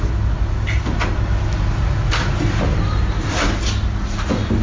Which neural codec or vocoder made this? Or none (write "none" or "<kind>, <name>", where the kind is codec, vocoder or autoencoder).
none